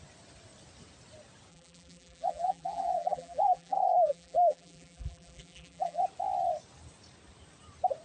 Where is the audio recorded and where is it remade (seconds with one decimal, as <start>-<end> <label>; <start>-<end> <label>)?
0.0-1.5 recorded; 1.5-6.0 remade; 6.0-8.0 recorded